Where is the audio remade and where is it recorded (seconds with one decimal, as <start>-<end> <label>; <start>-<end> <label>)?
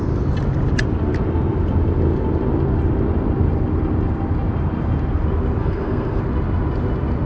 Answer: 0.0-5.6 recorded; 5.6-6.2 remade; 6.2-7.3 recorded